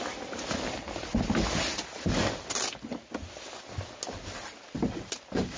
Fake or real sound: real